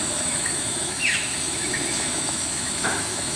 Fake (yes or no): yes